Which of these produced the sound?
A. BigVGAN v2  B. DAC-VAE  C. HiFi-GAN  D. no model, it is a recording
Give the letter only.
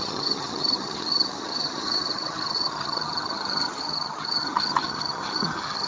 C